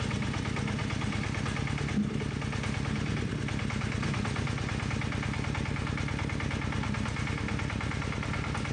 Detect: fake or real real